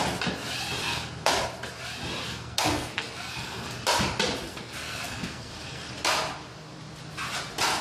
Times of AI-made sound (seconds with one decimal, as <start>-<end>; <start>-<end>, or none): 0.8-1.3; 2.2-3.7; 4.5-5.9